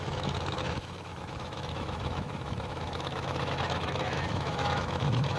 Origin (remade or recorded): remade